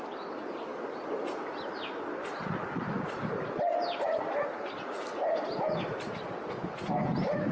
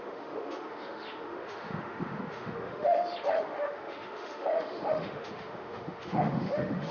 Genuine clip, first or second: first